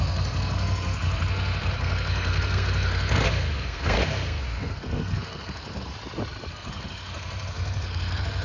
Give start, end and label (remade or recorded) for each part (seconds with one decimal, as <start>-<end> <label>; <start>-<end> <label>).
0.0-5.9 remade; 5.9-6.5 recorded; 6.5-8.4 remade